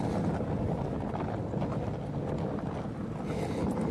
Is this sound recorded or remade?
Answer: recorded